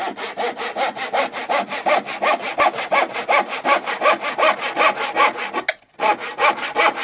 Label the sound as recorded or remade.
recorded